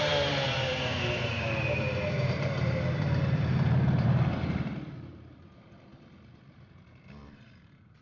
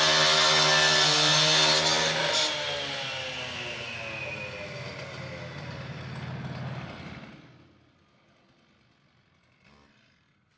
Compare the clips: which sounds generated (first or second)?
first